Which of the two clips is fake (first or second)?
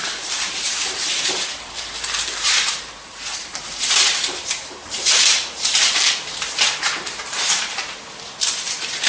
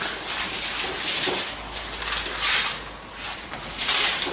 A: first